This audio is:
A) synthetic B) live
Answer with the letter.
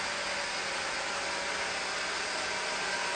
B